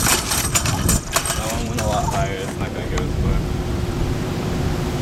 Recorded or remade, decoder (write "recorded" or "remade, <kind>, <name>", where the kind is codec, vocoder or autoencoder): remade, vocoder, BigVGAN v2